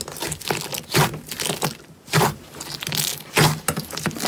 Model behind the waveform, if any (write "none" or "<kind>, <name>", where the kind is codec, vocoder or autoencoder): none